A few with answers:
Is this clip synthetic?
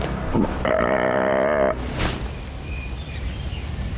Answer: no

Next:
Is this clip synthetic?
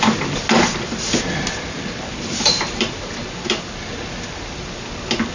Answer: no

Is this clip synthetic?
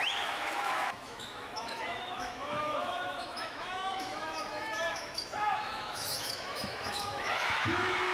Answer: yes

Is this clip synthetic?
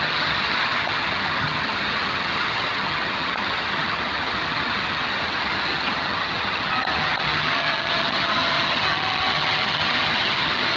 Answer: yes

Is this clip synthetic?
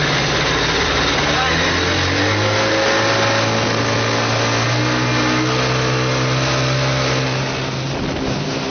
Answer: no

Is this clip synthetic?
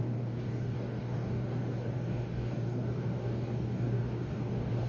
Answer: yes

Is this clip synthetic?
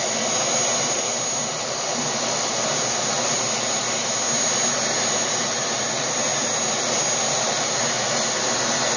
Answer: no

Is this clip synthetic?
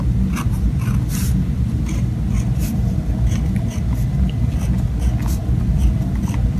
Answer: no